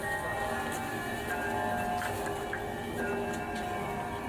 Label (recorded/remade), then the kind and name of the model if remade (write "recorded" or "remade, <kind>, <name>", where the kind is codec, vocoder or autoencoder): recorded